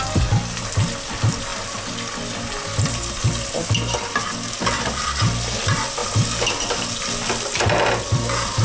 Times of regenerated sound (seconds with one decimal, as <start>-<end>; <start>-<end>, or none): none

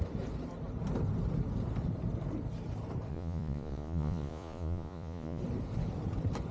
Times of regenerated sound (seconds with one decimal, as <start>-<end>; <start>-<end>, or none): 3.1-5.4